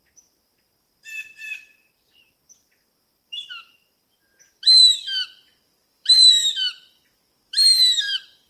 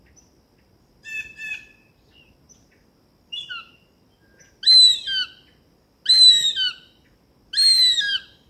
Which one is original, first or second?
second